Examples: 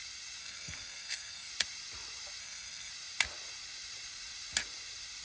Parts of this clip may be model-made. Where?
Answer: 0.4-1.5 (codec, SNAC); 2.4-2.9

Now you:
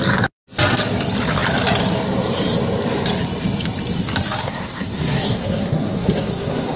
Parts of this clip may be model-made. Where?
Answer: 4.4-6.8 (codec, SNAC)

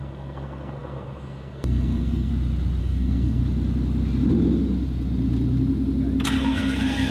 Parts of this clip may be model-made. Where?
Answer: 0.0-2.3 (codec, SNAC); 2.8-3.4; 6.4-7.1

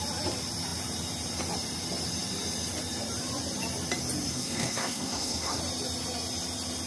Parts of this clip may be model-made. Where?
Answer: 4.3-5.6 (codec, SNAC)

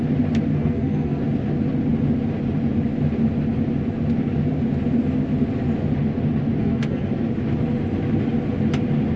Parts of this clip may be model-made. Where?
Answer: 0.5-1.2 (codec, SNAC); 6.6-7.1

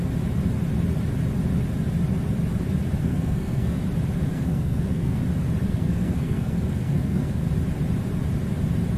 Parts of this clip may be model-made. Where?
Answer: 3.0-3.8 (codec, SNAC); 4.3-5.2; 5.7-7.5

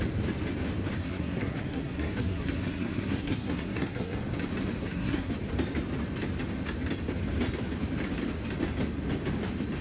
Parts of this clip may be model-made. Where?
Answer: 1.0-4.2 (codec, SNAC); 4.8-5.3

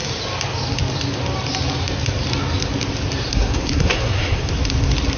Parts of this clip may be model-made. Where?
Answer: 3.3-4.5 (codec, SNAC)